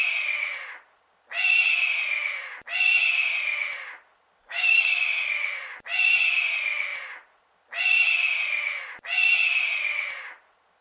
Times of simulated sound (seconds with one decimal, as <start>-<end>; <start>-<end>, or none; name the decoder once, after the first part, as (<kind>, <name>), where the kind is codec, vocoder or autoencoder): 4.4-5.3 (codec, DAC)